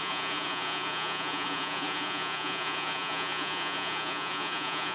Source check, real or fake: fake